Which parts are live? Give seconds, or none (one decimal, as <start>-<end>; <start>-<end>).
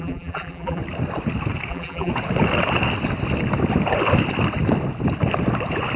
0.8-1.7; 2.1-6.0